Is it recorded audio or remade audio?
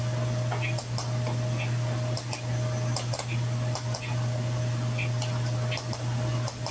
recorded